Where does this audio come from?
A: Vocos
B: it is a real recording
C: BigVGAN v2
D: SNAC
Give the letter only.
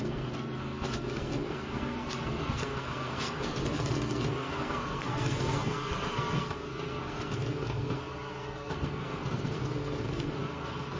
D